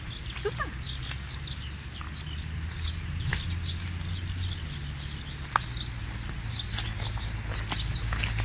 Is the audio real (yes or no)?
yes